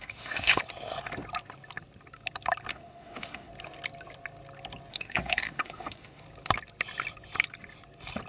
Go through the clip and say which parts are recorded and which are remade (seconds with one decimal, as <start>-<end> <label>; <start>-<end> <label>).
0.0-0.6 remade; 0.6-2.7 recorded; 2.7-3.5 remade; 3.5-4.9 recorded; 4.9-6.2 remade; 6.2-8.3 recorded